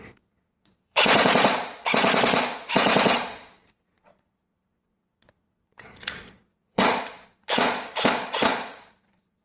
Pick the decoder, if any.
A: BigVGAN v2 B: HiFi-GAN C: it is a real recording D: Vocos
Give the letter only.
D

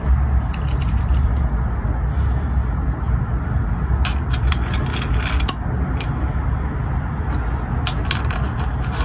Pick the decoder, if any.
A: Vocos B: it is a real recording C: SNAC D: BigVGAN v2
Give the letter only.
B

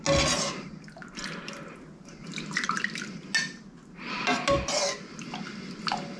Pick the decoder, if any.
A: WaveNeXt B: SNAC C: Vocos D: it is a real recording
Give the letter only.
D